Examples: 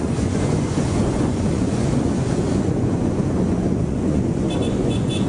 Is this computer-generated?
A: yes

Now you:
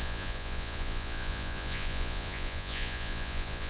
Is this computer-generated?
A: yes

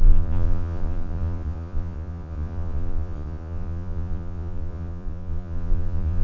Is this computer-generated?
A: yes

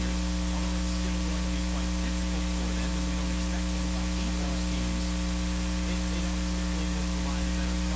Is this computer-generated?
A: no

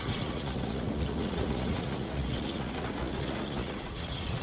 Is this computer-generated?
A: yes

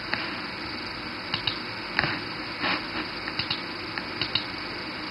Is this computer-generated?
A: no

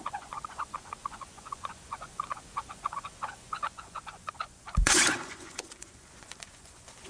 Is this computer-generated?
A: yes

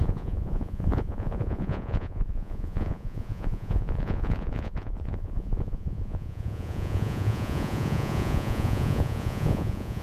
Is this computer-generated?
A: yes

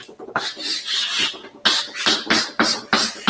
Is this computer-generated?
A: no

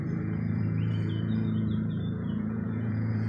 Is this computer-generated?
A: yes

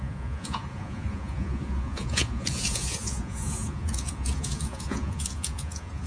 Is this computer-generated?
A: yes